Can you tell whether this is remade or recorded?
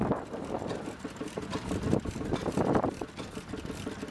remade